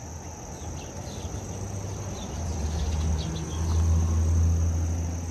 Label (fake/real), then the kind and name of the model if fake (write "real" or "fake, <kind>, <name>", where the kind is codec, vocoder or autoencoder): real